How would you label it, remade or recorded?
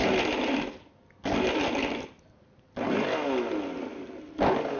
recorded